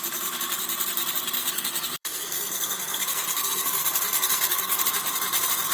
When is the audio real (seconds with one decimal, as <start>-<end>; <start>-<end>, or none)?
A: 0.0-1.4; 4.8-5.7